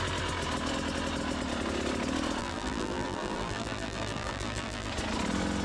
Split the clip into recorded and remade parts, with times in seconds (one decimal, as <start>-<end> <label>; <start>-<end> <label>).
0.0-2.4 recorded; 2.4-4.9 remade; 4.9-5.6 recorded